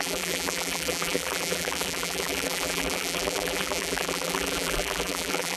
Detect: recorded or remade remade